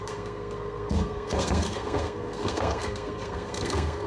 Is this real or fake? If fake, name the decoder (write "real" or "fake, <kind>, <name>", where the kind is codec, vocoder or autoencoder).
fake, codec, SNAC